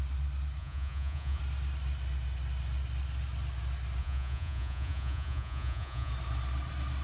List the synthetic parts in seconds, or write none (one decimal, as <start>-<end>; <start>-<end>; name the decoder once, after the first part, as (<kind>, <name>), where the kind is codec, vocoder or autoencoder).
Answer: 0.6-1.4 (vocoder, Vocos); 4.0-6.1